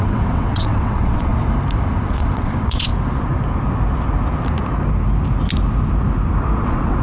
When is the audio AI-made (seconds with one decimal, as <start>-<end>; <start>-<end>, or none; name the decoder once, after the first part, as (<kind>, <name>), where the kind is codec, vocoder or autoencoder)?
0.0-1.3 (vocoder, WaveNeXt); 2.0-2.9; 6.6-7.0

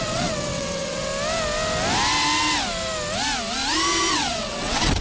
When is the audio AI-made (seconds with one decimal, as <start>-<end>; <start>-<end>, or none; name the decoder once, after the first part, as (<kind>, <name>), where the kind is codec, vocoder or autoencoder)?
0.0-1.1 (vocoder, WaveNeXt); 4.1-5.0

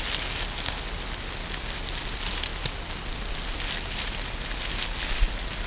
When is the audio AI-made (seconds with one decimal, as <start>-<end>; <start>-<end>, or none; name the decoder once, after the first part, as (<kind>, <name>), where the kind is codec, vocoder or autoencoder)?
none